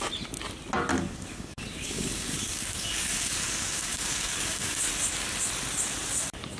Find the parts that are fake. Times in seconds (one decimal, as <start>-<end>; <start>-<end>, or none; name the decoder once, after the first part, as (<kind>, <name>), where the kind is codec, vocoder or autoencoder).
0.9-4.9 (codec, DAC)